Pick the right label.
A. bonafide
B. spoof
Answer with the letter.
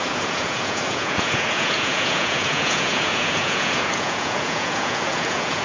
B